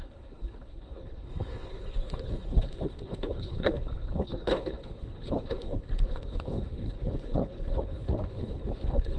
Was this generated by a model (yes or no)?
yes